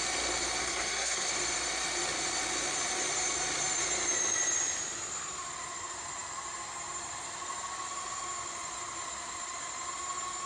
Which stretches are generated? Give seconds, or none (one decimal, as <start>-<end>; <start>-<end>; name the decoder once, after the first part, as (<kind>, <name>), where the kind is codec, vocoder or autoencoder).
0.6-1.3 (codec, SNAC)